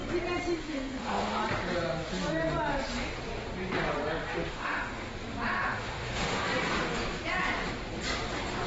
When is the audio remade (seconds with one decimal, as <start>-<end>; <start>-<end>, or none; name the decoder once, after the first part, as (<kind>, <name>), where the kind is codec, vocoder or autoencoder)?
0.6-1.4 (autoencoder, DAC-VAE); 4.5-5.1; 5.7-6.4